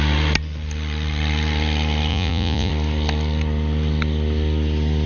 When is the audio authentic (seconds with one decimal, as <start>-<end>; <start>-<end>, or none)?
0.0-2.1; 2.7-5.1